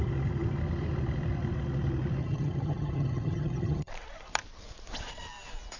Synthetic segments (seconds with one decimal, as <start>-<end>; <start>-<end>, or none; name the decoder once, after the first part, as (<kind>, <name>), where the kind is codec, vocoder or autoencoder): 2.2-3.9 (vocoder, HiFi-GAN)